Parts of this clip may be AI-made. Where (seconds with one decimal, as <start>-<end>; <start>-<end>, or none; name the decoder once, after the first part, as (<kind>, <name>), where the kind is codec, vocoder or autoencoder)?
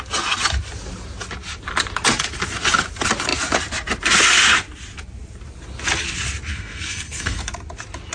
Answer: 6.5-7.5 (codec, SNAC)